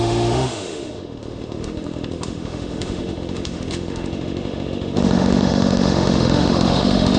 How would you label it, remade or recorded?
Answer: remade